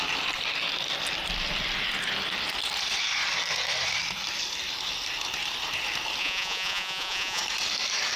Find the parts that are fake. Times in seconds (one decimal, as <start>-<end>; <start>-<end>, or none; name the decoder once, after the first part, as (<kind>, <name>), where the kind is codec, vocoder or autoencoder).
6.2-7.4 (vocoder, Vocos)